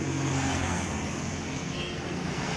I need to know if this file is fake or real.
fake